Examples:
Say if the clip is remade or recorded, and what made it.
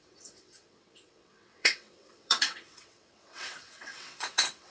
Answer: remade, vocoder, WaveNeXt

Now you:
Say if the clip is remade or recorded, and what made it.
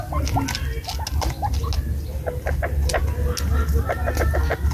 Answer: recorded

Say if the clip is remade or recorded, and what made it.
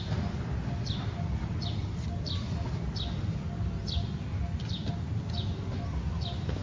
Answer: recorded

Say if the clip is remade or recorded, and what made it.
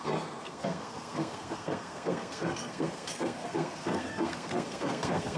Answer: remade, codec, SNAC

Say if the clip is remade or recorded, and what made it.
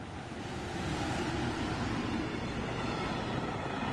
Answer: recorded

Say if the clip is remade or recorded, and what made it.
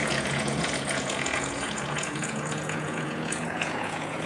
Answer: remade, vocoder, Vocos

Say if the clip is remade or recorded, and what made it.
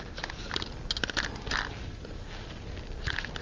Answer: recorded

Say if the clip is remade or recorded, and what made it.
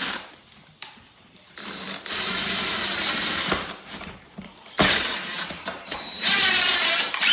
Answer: remade, vocoder, BigVGAN v2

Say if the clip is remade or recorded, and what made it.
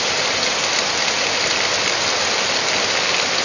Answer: recorded